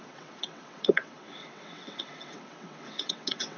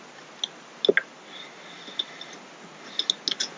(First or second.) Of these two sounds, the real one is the second